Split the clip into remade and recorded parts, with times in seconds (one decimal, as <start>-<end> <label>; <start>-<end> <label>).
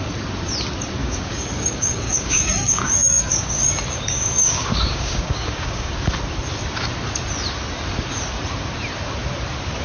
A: 0.0-1.0 recorded; 1.0-5.9 remade; 5.9-9.8 recorded